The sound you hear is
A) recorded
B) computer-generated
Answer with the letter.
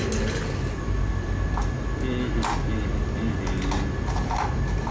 A